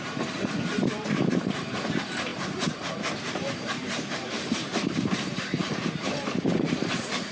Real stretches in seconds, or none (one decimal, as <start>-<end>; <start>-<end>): none